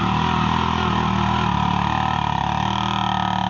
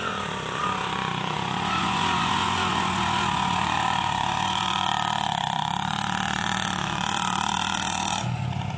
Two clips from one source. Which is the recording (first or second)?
first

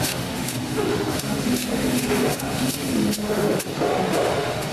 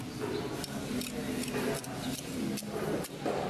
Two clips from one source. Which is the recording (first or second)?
second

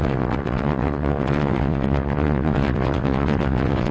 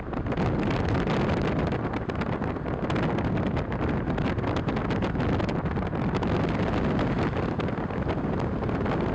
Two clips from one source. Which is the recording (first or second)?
second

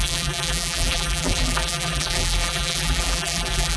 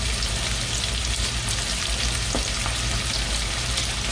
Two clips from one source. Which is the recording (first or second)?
second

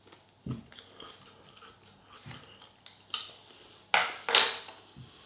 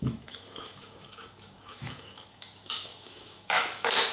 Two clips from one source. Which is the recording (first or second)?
first